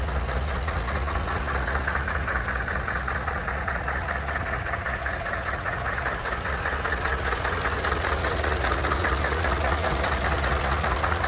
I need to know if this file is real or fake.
fake